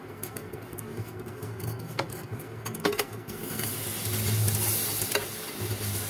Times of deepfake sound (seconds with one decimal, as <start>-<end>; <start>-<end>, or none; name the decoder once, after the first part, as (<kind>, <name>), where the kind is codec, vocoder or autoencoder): 0.0-3.7 (codec, SNAC)